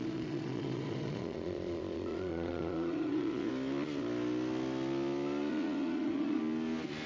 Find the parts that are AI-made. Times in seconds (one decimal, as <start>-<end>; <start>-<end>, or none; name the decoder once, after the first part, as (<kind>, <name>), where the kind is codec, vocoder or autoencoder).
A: 0.0-3.5 (vocoder, Vocos); 5.5-6.4